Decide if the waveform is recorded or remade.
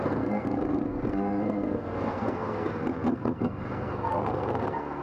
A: remade